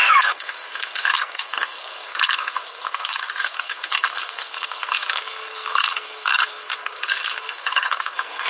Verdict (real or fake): fake